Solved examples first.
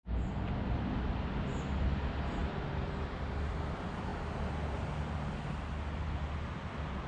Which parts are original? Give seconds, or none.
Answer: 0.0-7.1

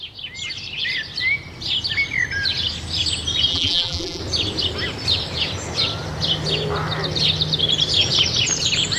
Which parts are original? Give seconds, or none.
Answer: 0.0-3.5; 4.2-9.0

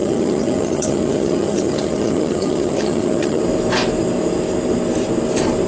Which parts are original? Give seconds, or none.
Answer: 3.4-5.7

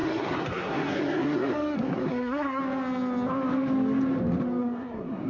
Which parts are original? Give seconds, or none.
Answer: 2.6-4.6

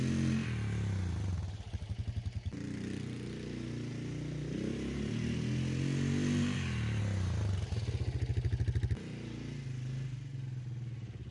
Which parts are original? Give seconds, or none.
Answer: 0.0-11.3